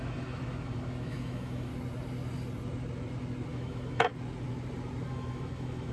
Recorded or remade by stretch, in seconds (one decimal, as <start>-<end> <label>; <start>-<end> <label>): 0.0-1.7 remade; 1.7-3.5 recorded; 3.5-4.1 remade; 4.1-5.1 recorded; 5.1-5.9 remade